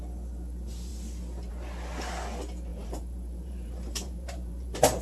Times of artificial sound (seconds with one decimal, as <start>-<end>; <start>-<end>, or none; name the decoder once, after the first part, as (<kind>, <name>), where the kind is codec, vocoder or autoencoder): 2.7-5.0 (vocoder, BigVGAN v2)